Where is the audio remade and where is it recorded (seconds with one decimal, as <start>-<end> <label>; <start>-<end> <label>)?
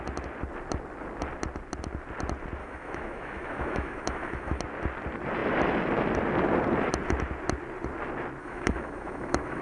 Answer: 0.0-2.6 recorded; 2.6-4.6 remade; 4.6-8.4 recorded; 8.4-9.6 remade